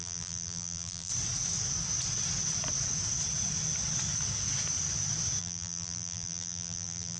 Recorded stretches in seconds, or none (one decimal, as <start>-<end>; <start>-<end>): 1.1-5.4